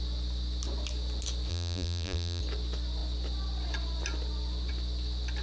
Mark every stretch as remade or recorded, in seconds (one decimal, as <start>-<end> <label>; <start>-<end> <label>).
0.0-1.5 recorded; 1.5-2.4 remade; 2.4-5.4 recorded